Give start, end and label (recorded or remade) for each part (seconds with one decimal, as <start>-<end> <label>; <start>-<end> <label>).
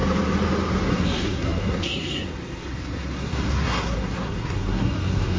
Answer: 0.0-0.9 recorded; 0.9-5.4 remade